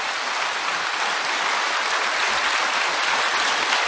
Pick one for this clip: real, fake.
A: real